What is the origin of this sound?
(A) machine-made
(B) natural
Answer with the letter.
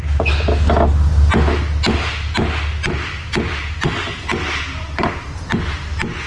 B